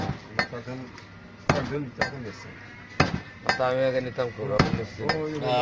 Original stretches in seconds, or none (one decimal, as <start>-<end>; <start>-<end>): 0.0-1.7; 2.2-5.6